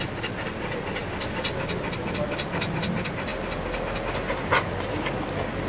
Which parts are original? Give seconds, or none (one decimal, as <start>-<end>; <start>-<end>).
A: 0.0-5.7